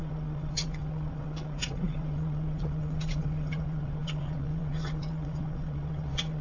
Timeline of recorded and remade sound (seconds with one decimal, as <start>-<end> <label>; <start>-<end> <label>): 0.0-6.4 remade